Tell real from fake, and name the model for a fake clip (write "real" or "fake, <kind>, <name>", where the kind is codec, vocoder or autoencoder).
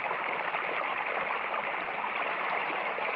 real